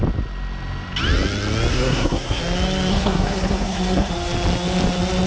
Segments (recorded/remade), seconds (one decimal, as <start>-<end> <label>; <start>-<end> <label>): 0.0-1.7 recorded; 1.7-2.4 remade; 2.4-2.9 recorded; 2.9-4.1 remade; 4.1-5.3 recorded